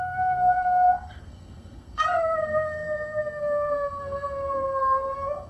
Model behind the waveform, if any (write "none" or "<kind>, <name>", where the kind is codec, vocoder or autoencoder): codec, SNAC